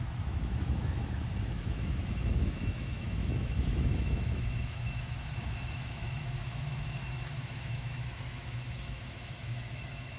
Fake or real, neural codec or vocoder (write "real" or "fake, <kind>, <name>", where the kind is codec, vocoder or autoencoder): fake, autoencoder, DAC-VAE